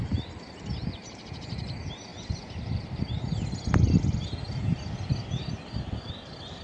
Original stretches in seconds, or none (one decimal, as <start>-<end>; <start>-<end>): 0.0-1.0; 1.6-6.6